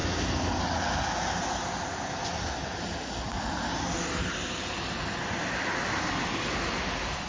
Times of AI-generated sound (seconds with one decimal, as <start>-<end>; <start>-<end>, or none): none